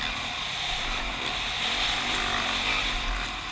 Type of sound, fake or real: real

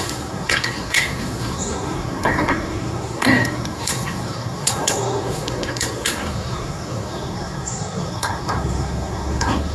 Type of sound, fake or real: fake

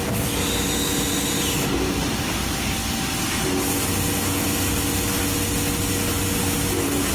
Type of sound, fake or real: real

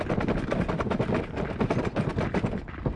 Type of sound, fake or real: real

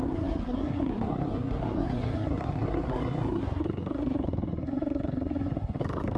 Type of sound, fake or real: fake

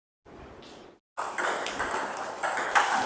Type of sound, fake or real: real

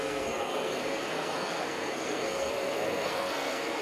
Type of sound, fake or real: fake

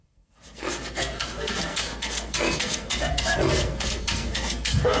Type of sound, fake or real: fake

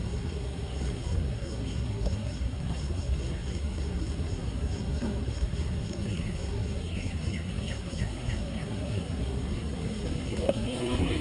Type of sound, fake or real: fake